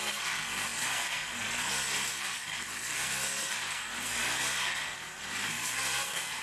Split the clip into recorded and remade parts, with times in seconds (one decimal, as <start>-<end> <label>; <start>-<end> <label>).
0.0-6.4 remade